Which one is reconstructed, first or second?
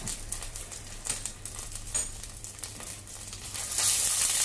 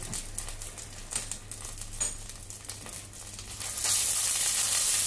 first